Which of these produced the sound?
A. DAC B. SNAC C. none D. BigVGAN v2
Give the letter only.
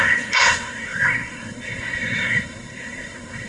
B